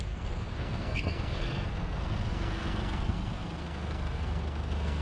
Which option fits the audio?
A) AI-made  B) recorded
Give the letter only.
A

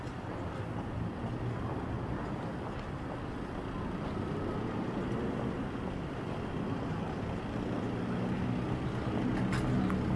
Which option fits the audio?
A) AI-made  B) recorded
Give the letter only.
B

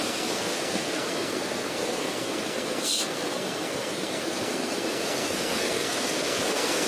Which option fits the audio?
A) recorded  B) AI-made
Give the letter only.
B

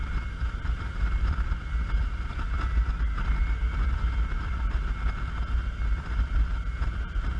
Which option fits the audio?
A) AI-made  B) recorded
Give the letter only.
B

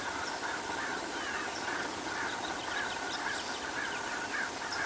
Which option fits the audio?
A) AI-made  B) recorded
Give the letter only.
B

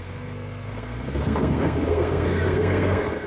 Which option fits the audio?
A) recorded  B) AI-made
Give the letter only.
B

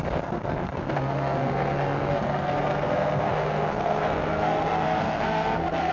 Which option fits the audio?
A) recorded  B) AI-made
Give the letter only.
B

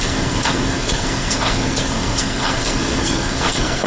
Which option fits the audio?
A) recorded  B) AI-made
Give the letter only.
B